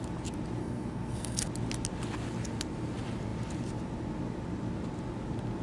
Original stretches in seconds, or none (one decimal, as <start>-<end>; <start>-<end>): 0.0-0.6; 1.5-5.6